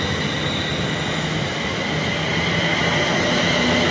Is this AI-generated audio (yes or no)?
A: no